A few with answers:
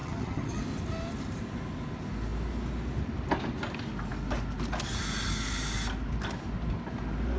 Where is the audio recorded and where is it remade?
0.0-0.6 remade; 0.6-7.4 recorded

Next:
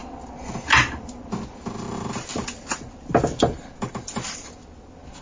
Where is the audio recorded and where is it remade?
0.0-5.2 recorded

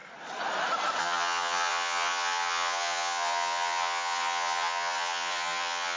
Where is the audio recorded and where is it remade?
0.0-1.0 recorded; 1.0-6.0 remade

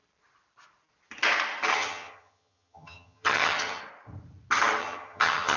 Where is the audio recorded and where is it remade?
0.0-1.7 recorded; 1.7-3.8 remade; 3.8-4.8 recorded; 4.8-5.6 remade

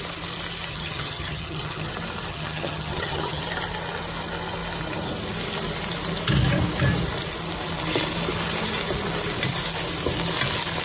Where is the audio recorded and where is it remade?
0.0-0.7 recorded; 0.7-1.9 remade; 1.9-2.3 recorded; 2.3-3.4 remade; 3.4-10.8 recorded